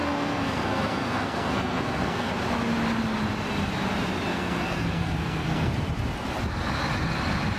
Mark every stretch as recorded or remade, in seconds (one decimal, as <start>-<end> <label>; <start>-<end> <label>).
0.0-2.3 remade; 2.3-4.3 recorded; 4.3-5.7 remade; 5.7-7.6 recorded